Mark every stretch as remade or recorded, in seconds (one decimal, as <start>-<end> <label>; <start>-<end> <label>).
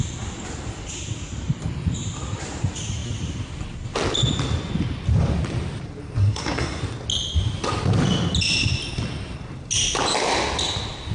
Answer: 0.0-6.2 recorded; 6.2-6.8 remade; 6.8-11.1 recorded